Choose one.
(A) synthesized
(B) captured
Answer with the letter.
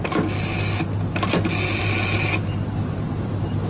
B